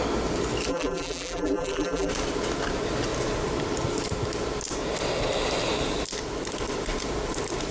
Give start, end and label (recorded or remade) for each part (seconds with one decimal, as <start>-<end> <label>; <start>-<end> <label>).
0.0-0.7 recorded; 0.7-2.1 remade; 2.1-7.7 recorded